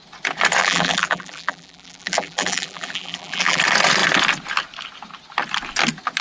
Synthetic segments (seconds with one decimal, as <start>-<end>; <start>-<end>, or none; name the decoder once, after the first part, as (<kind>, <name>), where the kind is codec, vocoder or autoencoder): 0.6-3.6 (vocoder, BigVGAN v2)